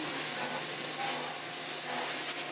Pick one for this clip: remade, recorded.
recorded